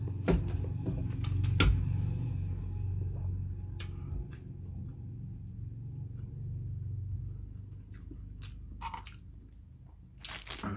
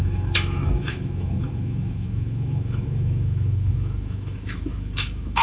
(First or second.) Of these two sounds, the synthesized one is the second